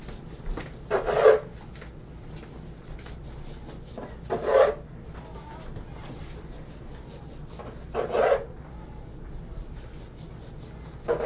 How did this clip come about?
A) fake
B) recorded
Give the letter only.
B